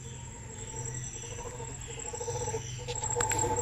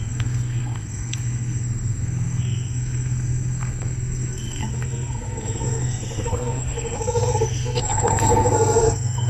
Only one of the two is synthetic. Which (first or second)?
second